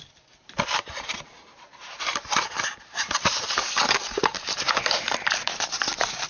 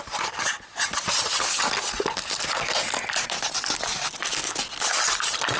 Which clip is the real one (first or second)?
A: second